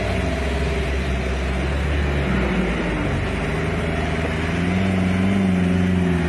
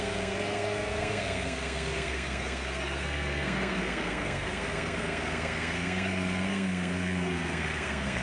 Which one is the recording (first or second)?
first